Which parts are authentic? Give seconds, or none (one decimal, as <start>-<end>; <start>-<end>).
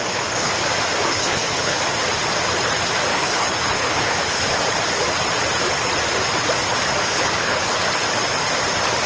0.5-1.1; 1.8-3.1; 4.5-7.0; 7.8-9.1